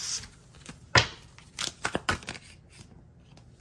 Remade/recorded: recorded